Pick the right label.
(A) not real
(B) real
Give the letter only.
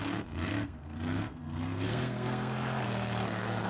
A